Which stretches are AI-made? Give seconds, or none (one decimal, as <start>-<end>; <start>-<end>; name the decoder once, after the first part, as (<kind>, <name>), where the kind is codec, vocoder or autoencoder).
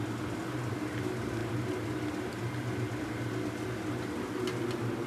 none